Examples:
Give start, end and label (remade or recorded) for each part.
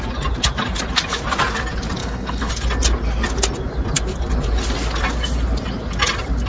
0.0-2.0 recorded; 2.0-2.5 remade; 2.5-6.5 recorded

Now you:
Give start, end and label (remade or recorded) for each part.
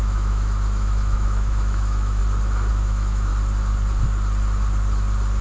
0.0-2.2 remade; 2.2-2.7 recorded; 2.7-3.3 remade; 3.3-5.4 recorded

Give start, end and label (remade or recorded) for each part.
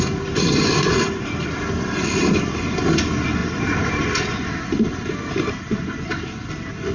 0.0-6.9 recorded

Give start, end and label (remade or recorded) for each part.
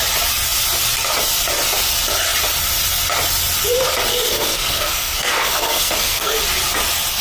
0.0-4.1 recorded; 4.1-6.4 remade; 6.4-7.2 recorded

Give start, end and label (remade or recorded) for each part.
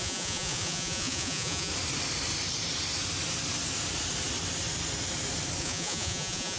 0.0-1.7 remade; 1.7-5.6 recorded; 5.6-6.6 remade